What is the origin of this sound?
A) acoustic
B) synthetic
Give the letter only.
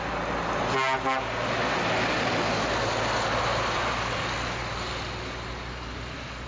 A